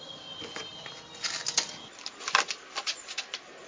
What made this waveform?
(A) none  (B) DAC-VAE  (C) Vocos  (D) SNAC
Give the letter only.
A